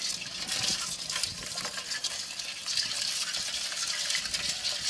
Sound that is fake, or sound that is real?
real